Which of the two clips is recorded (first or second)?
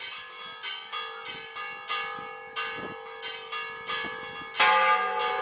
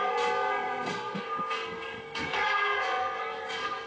first